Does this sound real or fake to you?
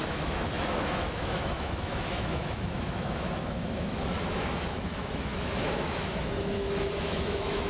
fake